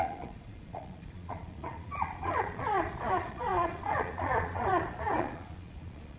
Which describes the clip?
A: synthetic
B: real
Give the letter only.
A